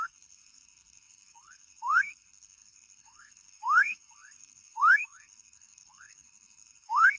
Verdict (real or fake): fake